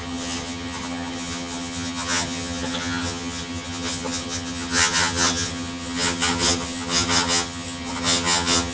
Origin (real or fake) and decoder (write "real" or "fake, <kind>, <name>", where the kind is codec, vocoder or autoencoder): fake, vocoder, HiFi-GAN